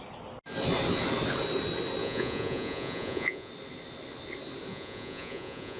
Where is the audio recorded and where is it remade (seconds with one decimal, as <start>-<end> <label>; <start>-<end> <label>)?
0.0-2.0 recorded; 2.0-3.5 remade; 3.5-4.7 recorded; 4.7-5.8 remade